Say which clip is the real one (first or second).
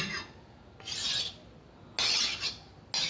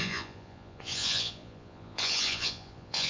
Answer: first